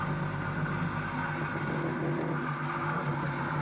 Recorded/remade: recorded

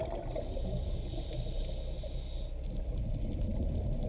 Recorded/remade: recorded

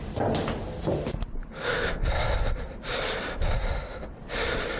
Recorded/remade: recorded